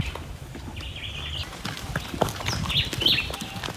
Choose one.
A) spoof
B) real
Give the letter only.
B